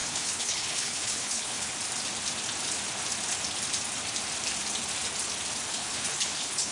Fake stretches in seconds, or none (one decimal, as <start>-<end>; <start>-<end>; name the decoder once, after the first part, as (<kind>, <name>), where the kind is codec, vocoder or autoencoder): 0.0-1.7 (codec, HILCodec); 5.7-6.7